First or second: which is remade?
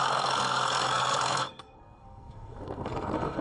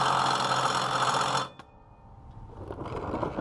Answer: first